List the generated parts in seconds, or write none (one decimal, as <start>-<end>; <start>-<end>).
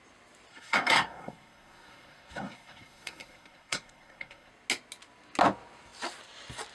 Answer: 0.5-4.5